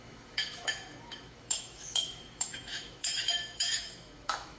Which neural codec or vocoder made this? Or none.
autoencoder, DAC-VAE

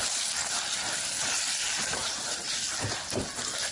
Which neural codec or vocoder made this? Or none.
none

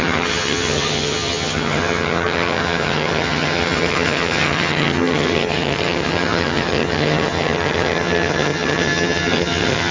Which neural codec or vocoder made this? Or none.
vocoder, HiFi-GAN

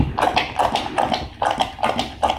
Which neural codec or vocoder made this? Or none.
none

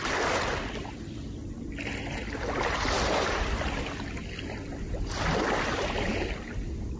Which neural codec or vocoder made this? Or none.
none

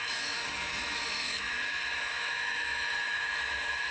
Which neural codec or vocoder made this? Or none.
autoencoder, DAC-VAE